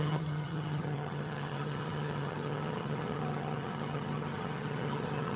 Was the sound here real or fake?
fake